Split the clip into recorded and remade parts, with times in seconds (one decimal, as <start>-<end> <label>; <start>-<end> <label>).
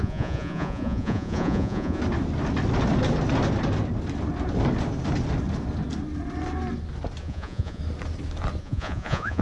0.0-2.0 remade; 2.0-7.2 recorded; 7.2-7.8 remade; 7.8-8.6 recorded; 8.6-9.4 remade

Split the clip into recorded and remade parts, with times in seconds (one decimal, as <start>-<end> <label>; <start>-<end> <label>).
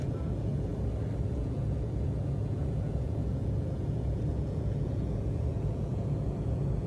0.0-0.7 remade; 0.7-1.3 recorded; 1.3-6.9 remade